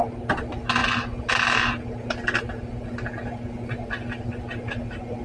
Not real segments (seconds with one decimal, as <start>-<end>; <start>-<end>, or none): none